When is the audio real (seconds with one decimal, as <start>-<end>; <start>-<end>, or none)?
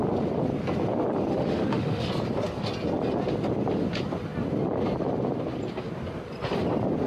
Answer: 0.0-1.3; 2.1-7.1